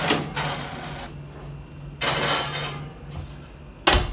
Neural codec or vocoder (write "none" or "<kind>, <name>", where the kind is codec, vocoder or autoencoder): none